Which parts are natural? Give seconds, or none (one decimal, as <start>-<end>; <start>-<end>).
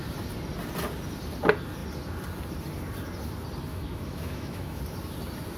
0.0-3.7; 4.8-5.6